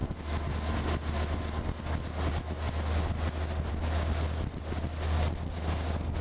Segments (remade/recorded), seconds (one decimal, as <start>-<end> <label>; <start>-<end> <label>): 0.0-6.2 recorded